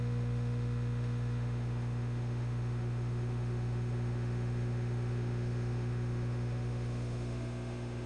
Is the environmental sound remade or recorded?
remade